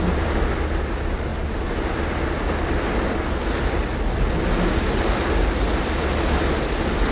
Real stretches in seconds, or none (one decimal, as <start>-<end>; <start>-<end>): 0.0-7.1